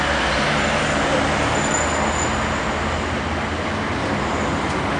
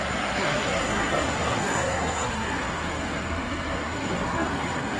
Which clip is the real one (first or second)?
first